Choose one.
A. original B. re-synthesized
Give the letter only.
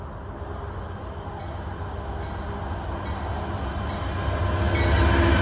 A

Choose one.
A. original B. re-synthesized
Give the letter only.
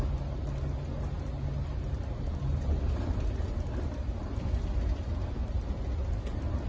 A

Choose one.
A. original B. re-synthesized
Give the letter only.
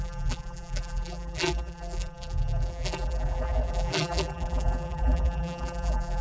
B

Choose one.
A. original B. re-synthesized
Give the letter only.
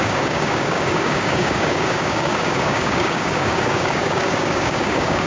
B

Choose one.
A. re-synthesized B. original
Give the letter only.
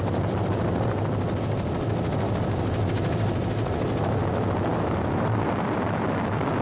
B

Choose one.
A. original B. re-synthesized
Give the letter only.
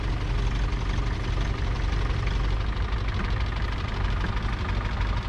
A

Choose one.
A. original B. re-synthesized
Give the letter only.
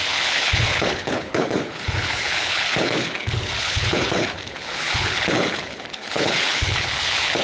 B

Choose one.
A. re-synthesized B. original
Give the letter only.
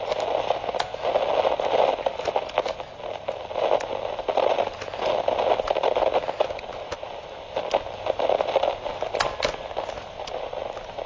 B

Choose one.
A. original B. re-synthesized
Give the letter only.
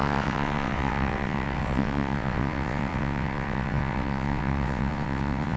B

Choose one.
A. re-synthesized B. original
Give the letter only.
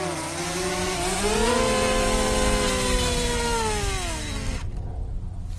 B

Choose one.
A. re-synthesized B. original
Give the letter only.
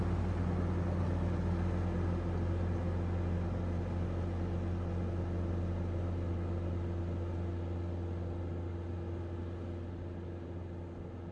B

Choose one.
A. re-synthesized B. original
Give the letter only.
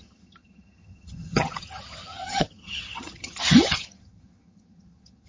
A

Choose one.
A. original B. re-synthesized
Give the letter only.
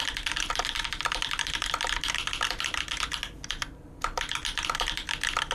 A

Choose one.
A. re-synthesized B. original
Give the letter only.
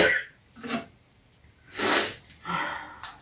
B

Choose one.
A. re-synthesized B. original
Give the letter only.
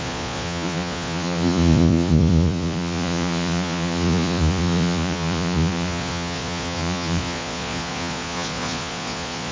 A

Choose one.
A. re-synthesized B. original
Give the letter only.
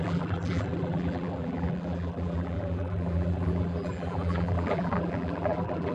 A